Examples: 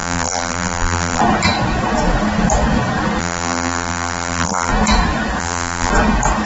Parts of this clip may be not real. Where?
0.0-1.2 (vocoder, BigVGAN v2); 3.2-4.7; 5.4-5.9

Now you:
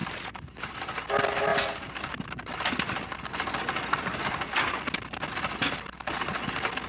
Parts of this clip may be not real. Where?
0.0-0.7 (vocoder, BigVGAN v2)

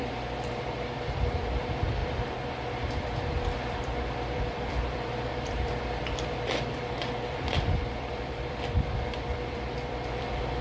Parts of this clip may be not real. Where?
0.6-10.6 (vocoder, BigVGAN v2)

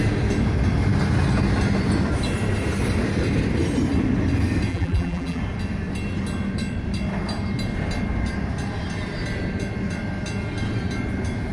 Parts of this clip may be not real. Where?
4.7-5.4 (vocoder, BigVGAN v2)